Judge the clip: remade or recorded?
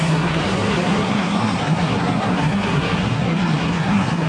remade